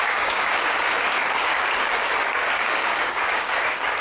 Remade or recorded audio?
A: remade